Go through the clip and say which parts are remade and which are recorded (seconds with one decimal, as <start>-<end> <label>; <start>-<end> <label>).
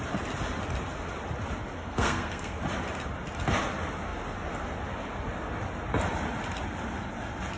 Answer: 0.0-1.8 recorded; 1.8-2.6 remade; 2.6-7.6 recorded